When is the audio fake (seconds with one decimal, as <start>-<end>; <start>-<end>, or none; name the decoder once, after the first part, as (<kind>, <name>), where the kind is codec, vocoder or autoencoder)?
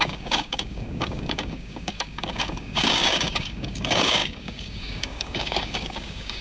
0.0-6.4 (codec, DAC)